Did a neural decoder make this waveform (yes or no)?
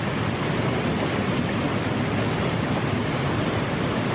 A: no